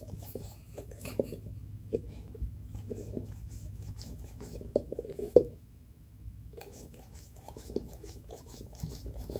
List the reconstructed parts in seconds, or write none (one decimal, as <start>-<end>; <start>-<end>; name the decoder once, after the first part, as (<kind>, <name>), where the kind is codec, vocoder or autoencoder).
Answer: 0.0-9.4 (autoencoder, DAC-VAE)